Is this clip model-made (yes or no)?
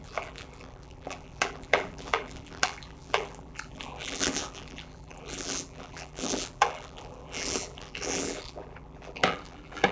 yes